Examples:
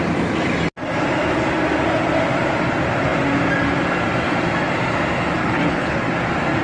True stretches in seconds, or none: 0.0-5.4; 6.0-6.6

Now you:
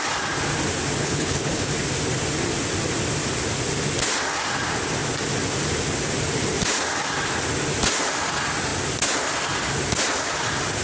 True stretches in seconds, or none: 0.0-1.0; 1.7-10.8

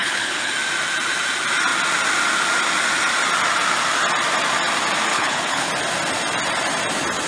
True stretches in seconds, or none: 0.5-5.1; 5.7-7.3